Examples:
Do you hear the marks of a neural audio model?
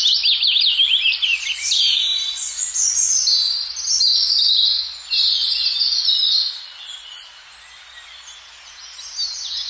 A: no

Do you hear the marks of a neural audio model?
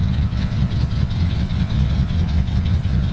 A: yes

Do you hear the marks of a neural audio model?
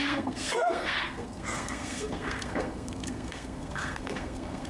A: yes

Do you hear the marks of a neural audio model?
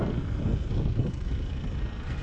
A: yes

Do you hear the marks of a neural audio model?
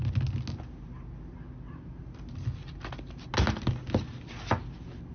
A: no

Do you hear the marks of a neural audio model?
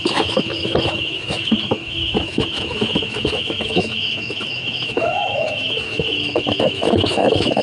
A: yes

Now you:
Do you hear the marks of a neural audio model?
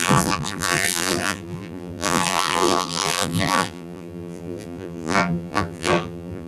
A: yes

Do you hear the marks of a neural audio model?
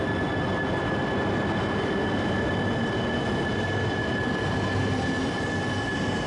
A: no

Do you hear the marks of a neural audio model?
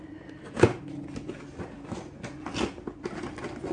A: no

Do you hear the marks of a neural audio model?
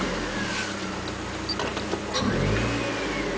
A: no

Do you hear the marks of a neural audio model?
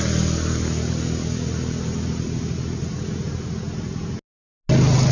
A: no